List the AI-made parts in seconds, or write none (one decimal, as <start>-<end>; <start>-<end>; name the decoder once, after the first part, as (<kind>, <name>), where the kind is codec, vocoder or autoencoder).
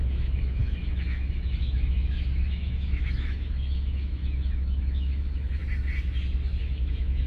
0.0-5.6 (autoencoder, DAC-VAE); 6.6-7.3